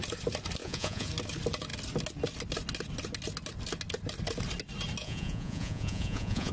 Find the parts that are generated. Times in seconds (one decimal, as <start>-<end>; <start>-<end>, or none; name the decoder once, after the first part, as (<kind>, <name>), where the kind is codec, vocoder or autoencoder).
0.6-1.1 (vocoder, Vocos); 5.0-6.5